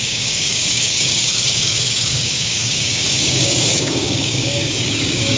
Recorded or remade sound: remade